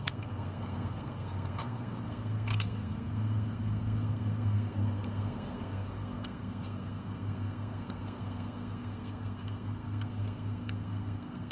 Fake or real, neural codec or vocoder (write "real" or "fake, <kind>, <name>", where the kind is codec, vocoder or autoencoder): fake, codec, SNAC